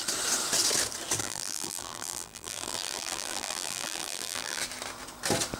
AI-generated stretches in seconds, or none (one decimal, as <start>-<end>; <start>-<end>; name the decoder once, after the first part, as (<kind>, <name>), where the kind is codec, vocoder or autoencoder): 1.2-4.6 (vocoder, BigVGAN v2)